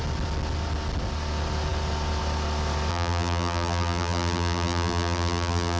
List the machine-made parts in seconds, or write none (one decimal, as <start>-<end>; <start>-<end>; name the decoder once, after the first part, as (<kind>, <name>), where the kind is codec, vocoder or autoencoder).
2.9-5.8 (vocoder, BigVGAN v2)